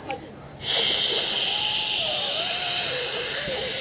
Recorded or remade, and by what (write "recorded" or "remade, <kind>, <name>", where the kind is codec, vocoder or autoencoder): recorded